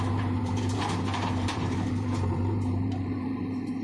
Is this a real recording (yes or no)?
no